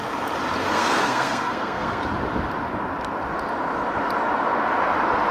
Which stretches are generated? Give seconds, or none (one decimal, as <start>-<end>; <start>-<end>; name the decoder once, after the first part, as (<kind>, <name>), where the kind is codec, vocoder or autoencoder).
0.7-2.0 (codec, SNAC)